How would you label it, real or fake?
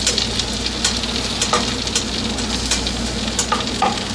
real